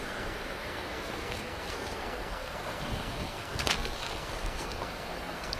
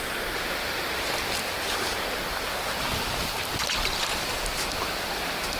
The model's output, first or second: first